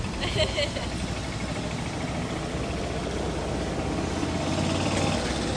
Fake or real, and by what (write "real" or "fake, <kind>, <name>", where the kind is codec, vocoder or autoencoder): real